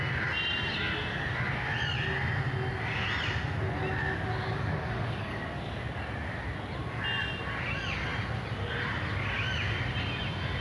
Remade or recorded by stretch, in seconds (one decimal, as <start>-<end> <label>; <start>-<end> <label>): 0.0-4.4 recorded; 4.4-5.4 remade; 5.4-10.6 recorded